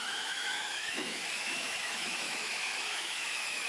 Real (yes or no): no